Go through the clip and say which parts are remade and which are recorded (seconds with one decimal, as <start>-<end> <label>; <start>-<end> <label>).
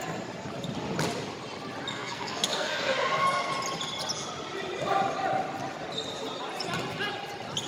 0.0-1.9 recorded; 1.9-3.5 remade; 3.5-7.7 recorded